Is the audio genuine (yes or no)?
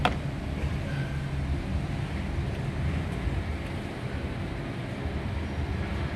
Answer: yes